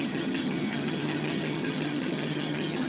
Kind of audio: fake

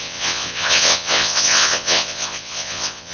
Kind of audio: fake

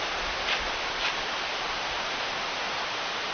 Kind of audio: real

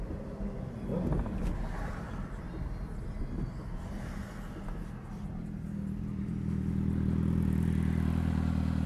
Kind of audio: real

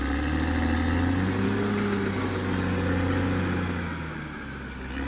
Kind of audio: real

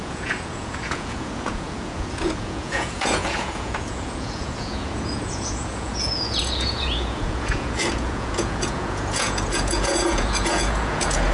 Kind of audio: fake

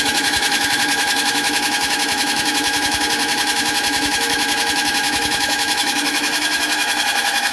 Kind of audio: fake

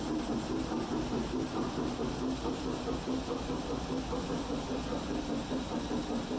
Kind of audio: real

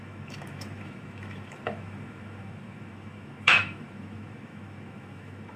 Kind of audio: fake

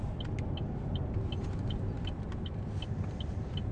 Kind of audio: real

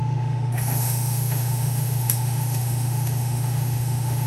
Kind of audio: fake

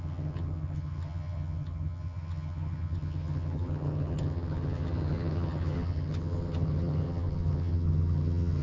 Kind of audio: fake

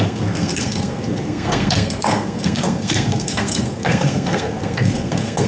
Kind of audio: fake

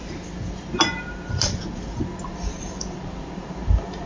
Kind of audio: real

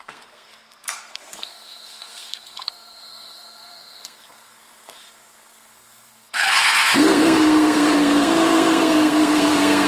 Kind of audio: fake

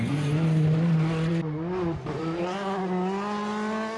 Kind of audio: real